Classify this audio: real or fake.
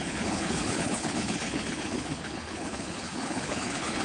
fake